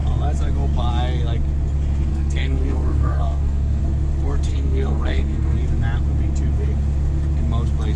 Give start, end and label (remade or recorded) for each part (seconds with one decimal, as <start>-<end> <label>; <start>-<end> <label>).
0.0-2.1 recorded; 2.1-3.8 remade; 3.8-4.5 recorded; 4.5-5.6 remade; 5.6-8.0 recorded